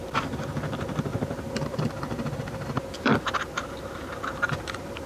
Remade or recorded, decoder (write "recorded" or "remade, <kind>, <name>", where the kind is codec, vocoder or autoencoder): remade, vocoder, BigVGAN v2